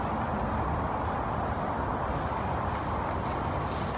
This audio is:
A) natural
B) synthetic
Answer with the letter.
A